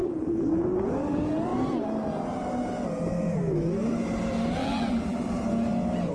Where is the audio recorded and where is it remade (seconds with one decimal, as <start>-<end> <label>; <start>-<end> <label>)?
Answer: 0.0-4.6 recorded; 4.6-5.4 remade; 5.4-6.1 recorded